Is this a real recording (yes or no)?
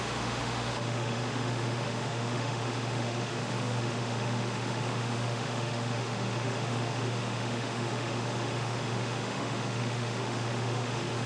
no